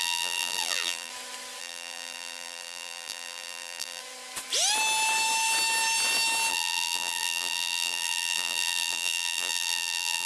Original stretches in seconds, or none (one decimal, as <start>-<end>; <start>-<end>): 1.1-1.6; 4.0-6.5